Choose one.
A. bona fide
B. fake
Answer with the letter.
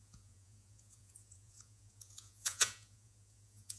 B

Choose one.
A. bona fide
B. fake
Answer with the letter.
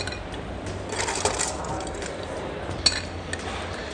A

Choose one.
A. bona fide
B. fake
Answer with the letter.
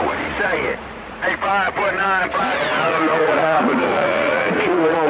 B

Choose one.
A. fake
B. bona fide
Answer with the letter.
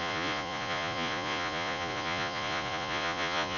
A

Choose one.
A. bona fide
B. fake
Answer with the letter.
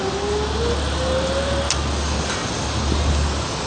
A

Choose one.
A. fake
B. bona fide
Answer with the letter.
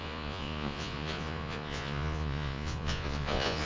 A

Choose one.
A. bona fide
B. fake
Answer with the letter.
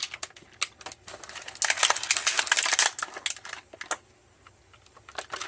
A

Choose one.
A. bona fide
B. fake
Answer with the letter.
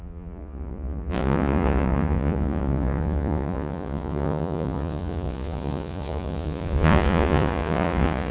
B